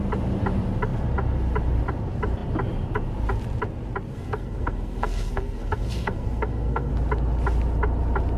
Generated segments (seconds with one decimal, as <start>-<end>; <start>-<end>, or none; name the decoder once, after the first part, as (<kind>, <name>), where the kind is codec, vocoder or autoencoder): 4.1-6.9 (codec, SNAC)